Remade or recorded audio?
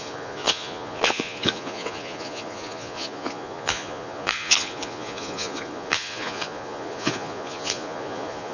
remade